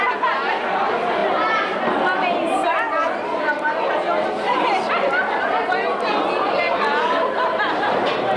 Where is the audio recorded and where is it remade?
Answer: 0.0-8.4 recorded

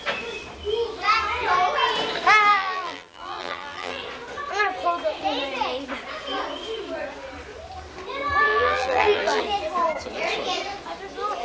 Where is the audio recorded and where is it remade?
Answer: 0.0-2.5 recorded; 2.5-4.0 remade; 4.0-8.5 recorded; 8.5-9.4 remade; 9.4-11.4 recorded